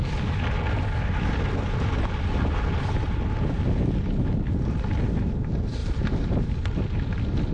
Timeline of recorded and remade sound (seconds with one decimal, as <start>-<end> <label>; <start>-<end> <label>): 0.0-5.8 recorded; 5.8-6.4 remade; 6.4-7.5 recorded